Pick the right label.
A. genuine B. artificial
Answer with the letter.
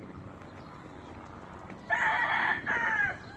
A